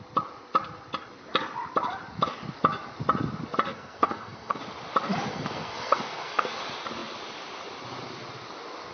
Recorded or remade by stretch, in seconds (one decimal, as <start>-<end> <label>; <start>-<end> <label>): 0.0-3.7 recorded; 3.7-4.6 remade; 4.6-5.3 recorded; 5.3-6.6 remade; 6.6-8.9 recorded